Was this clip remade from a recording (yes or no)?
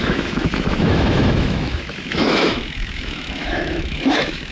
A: yes